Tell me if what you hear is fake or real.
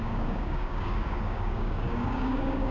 fake